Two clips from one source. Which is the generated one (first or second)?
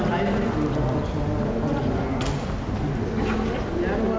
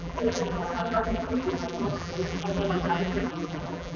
second